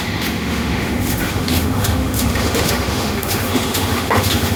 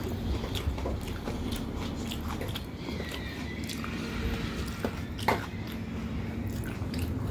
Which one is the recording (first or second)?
second